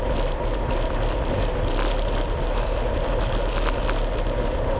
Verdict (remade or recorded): recorded